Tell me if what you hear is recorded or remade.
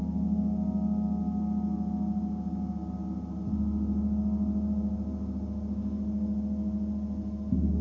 recorded